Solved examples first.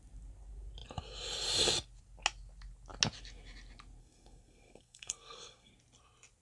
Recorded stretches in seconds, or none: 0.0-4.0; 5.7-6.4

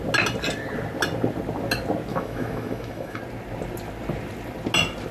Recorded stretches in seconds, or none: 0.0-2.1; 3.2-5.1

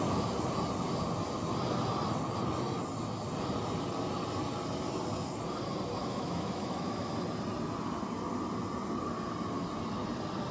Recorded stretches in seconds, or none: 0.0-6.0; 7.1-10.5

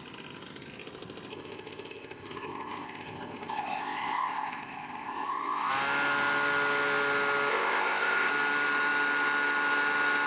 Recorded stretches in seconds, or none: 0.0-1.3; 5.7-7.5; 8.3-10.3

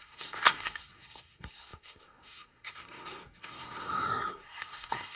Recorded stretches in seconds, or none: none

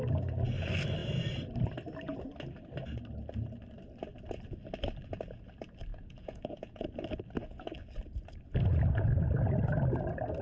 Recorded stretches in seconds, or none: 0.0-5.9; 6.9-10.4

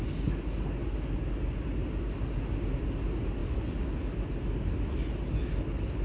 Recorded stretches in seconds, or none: 0.0-6.0